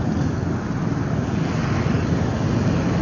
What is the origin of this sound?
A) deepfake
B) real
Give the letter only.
B